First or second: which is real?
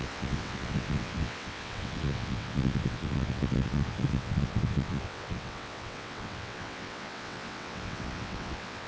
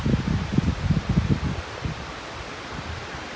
second